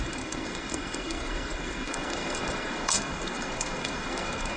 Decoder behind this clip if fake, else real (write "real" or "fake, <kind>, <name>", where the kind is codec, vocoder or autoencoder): fake, codec, SNAC